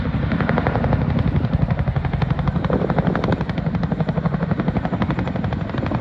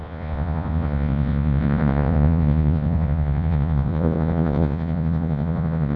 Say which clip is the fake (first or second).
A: second